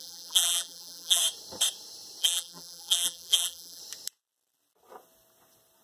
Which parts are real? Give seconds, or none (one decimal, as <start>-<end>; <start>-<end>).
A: 1.2-2.2; 3.8-5.8

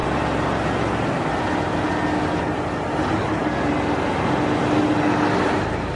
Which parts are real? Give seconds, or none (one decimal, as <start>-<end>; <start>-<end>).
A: 0.0-6.0

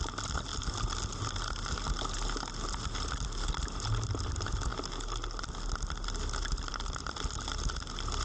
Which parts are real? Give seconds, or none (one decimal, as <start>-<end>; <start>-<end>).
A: 0.0-8.2

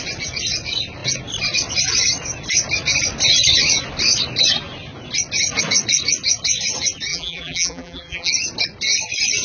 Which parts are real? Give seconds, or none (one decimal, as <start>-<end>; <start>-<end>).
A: 0.0-7.1; 8.3-9.4